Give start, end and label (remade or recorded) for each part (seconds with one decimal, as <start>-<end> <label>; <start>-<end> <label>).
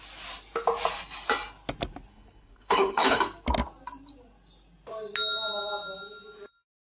0.0-2.1 recorded; 2.1-3.2 remade; 3.2-6.8 recorded